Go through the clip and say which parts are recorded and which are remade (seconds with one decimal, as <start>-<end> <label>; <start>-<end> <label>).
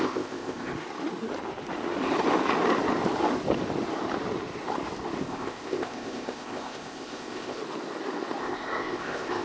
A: 0.0-0.7 remade; 0.7-5.2 recorded; 5.2-7.6 remade; 7.6-8.4 recorded; 8.4-9.4 remade